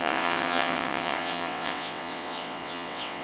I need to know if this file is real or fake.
fake